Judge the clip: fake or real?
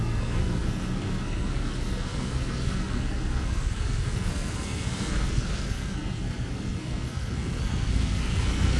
fake